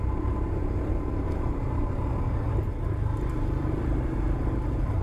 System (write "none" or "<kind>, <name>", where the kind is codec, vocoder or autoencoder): vocoder, BigVGAN v2